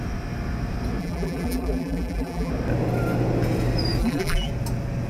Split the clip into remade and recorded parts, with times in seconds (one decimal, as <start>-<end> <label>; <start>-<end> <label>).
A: 0.0-1.0 recorded; 1.0-2.5 remade; 2.5-4.0 recorded; 4.0-4.5 remade; 4.5-5.1 recorded

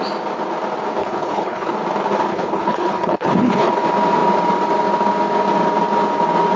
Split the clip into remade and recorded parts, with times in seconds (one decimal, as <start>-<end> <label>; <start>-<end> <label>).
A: 0.0-1.0 recorded; 1.0-1.7 remade; 1.7-2.3 recorded; 2.3-3.7 remade; 3.7-6.6 recorded

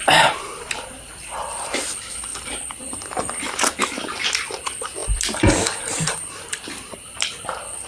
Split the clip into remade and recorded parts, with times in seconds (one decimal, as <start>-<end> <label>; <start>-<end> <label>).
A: 0.0-2.3 recorded; 2.3-3.8 remade; 3.8-5.0 recorded; 5.0-7.2 remade; 7.2-7.9 recorded

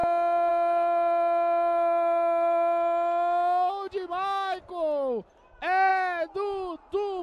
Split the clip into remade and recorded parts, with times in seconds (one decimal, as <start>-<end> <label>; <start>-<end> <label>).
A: 0.0-7.2 recorded